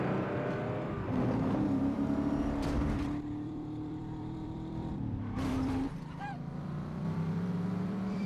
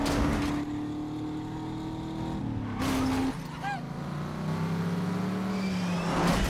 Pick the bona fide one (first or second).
second